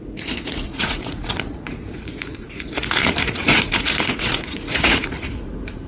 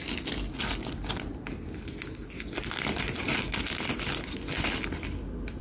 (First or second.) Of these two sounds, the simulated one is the first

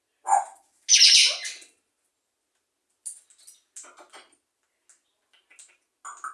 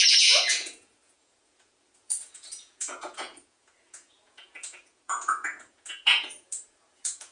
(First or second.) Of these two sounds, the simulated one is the second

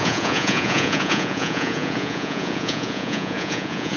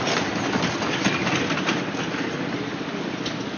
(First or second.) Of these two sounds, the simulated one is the first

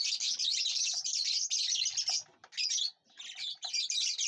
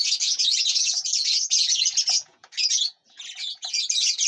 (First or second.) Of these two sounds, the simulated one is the second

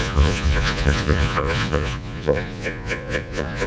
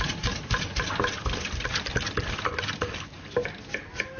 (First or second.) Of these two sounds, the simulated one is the first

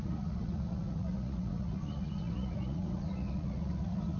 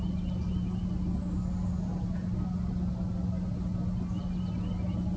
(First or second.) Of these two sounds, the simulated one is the first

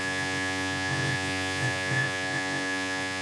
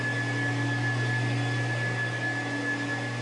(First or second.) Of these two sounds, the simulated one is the first